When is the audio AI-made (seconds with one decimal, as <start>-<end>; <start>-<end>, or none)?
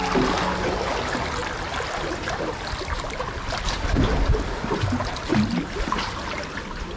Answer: none